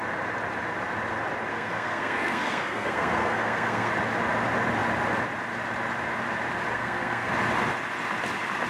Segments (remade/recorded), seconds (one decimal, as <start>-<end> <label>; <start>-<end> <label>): 0.0-1.5 recorded; 1.5-3.9 remade; 3.9-6.7 recorded; 6.7-7.3 remade; 7.3-8.7 recorded